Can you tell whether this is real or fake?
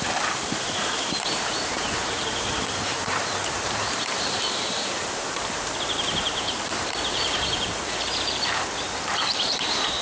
fake